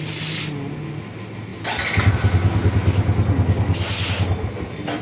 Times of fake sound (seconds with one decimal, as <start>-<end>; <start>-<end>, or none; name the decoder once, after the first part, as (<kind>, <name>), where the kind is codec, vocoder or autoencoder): none